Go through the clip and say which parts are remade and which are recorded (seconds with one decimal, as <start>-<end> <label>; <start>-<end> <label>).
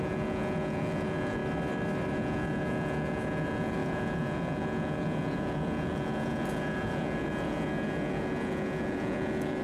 0.0-1.4 remade; 1.4-2.1 recorded; 2.1-9.6 remade